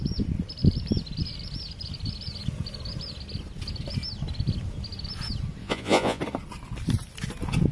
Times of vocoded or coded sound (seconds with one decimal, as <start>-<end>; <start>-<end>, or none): 5.6-6.2